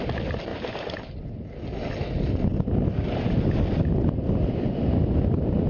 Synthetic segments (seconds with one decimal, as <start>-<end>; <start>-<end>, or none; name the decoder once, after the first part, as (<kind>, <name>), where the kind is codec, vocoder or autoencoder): none